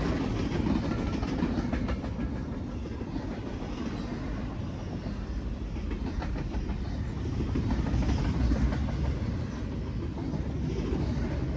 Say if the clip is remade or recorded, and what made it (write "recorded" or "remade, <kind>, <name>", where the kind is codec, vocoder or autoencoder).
recorded